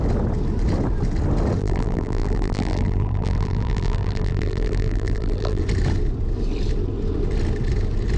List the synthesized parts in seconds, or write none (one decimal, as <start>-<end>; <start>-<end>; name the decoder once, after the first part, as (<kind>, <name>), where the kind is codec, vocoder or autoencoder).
1.6-5.6 (vocoder, BigVGAN v2)